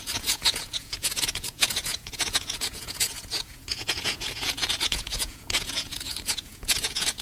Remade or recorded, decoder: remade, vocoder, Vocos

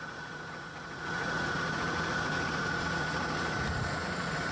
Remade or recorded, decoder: remade, vocoder, Vocos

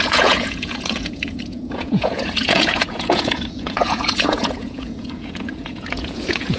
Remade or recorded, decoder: remade, vocoder, Vocos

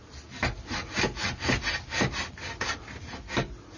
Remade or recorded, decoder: recorded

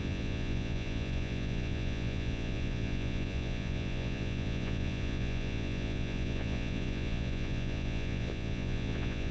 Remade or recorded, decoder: remade, vocoder, Vocos